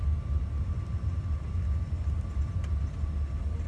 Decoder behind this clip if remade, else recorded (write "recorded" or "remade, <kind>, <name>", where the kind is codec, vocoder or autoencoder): recorded